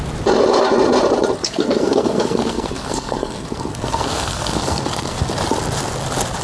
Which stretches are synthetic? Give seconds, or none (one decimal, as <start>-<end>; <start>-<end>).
1.4-5.2